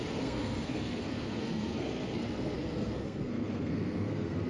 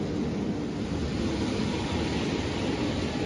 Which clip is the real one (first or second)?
second